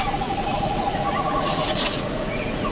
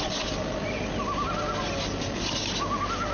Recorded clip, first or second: second